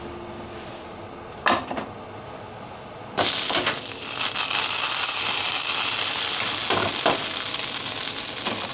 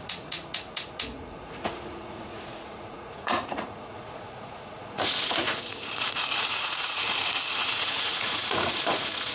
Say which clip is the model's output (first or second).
second